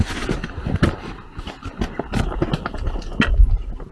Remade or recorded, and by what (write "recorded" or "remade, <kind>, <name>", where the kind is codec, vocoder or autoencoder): recorded